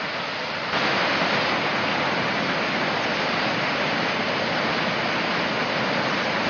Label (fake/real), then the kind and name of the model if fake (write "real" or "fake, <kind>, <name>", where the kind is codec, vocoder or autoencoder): real